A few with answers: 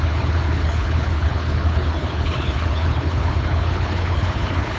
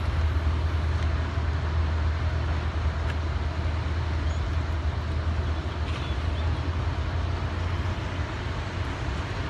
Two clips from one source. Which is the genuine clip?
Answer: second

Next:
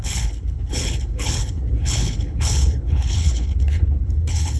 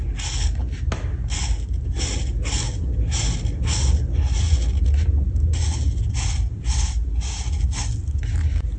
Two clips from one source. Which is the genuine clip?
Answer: second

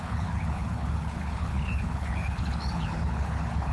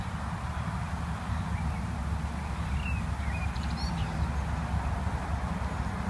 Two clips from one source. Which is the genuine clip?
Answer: second